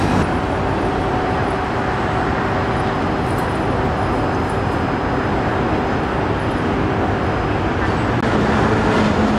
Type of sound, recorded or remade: recorded